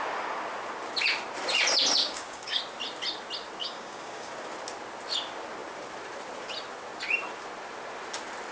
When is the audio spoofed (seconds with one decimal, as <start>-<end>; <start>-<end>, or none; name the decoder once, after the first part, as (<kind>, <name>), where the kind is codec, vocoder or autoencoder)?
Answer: 2.0-2.6 (codec, DAC); 3.6-4.3